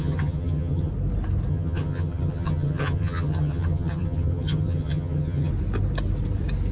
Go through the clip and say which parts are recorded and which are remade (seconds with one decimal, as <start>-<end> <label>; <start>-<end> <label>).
0.0-0.9 remade; 0.9-1.5 recorded; 1.5-5.5 remade; 5.5-6.7 recorded